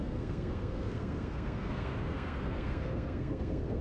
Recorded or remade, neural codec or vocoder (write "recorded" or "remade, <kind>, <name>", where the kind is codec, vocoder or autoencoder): remade, codec, SNAC